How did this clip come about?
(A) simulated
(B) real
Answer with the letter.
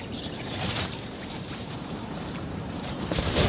A